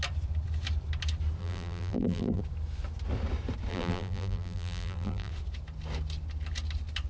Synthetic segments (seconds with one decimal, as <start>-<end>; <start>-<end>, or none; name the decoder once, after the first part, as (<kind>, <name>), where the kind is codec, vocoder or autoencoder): 1.4-2.4 (vocoder, BigVGAN v2); 3.7-5.3